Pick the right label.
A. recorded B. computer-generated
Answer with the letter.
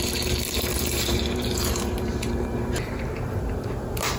B